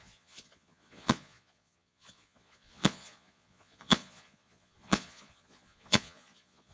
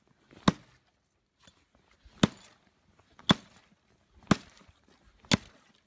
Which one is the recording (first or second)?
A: second